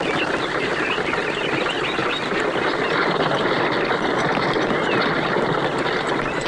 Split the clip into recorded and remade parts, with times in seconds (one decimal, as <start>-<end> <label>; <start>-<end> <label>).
0.0-6.5 recorded